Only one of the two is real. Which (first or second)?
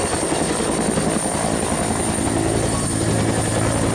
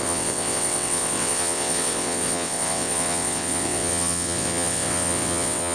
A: first